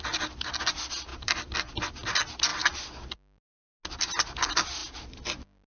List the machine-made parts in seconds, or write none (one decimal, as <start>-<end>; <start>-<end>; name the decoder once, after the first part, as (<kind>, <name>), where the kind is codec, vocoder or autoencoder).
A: 1.1-1.9 (vocoder, BigVGAN v2)